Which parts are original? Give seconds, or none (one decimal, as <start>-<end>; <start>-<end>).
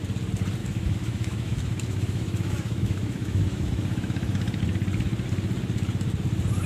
0.0-0.6; 4.6-6.7